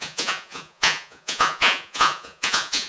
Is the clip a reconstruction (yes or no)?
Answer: yes